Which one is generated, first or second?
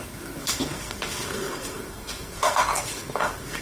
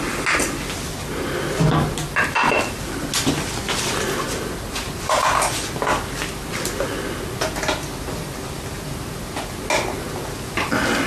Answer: first